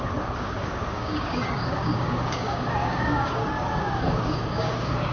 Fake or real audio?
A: fake